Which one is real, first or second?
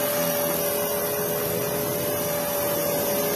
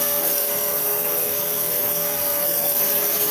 first